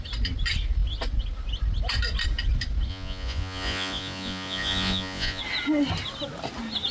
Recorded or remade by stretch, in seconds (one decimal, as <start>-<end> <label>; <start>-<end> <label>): 0.0-2.9 recorded; 2.9-5.4 remade; 5.4-6.9 recorded